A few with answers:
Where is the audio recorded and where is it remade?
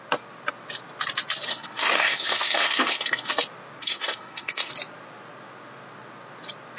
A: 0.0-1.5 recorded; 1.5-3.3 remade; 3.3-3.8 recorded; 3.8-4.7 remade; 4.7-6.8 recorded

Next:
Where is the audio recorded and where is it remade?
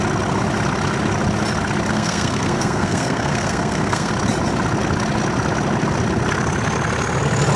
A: 0.0-1.9 recorded; 1.9-4.1 remade; 4.1-7.6 recorded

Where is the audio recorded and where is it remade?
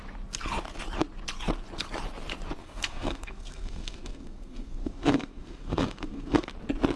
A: 0.0-2.6 recorded; 2.6-6.5 remade; 6.5-7.0 recorded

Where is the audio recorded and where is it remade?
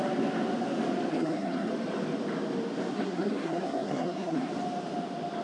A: 0.0-1.1 recorded; 1.1-1.7 remade; 1.7-2.9 recorded; 2.9-4.5 remade; 4.5-5.4 recorded